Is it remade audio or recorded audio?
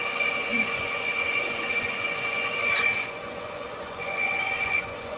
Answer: remade